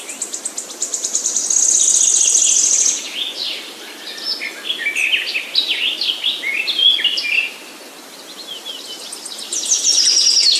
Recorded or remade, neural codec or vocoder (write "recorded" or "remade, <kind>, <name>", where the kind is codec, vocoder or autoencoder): recorded